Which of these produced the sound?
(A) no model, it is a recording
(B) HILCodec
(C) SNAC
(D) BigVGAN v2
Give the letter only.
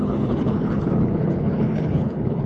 B